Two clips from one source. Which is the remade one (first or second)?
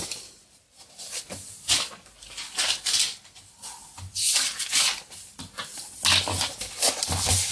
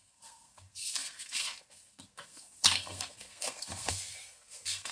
second